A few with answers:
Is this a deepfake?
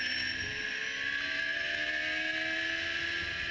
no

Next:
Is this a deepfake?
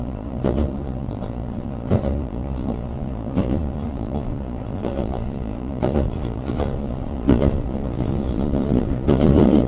yes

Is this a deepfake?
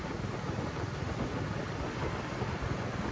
no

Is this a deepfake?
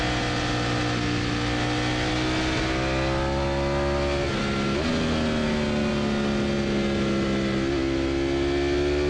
no